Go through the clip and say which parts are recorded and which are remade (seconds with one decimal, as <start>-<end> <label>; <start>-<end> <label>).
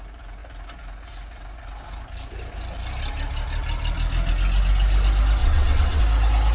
0.0-5.4 recorded; 5.4-6.0 remade; 6.0-6.5 recorded